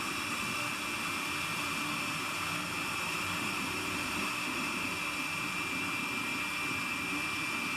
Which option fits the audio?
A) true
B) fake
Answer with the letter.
A